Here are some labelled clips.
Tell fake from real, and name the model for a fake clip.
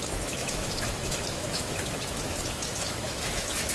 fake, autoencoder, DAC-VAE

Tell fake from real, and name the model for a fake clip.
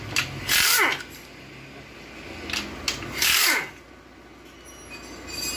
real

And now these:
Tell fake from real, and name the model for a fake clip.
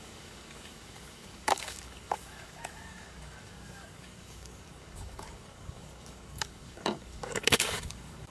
fake, codec, DAC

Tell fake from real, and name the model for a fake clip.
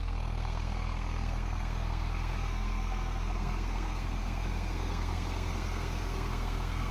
fake, codec, SNAC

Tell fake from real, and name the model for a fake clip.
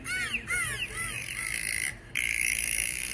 real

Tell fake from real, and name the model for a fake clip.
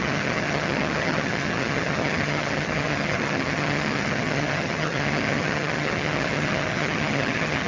fake, vocoder, HiFi-GAN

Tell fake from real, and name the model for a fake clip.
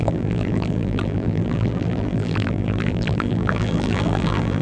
fake, vocoder, BigVGAN v2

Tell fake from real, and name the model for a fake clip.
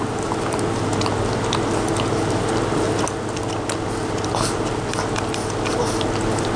real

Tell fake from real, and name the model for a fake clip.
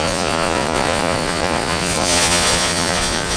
fake, vocoder, Vocos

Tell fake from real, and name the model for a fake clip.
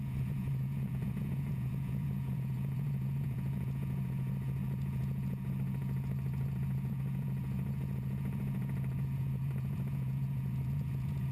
fake, vocoder, Vocos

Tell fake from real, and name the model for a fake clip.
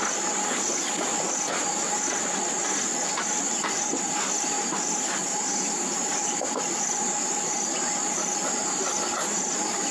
real